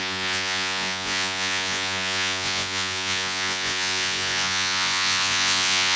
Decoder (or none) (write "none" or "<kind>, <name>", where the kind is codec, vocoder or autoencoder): vocoder, Vocos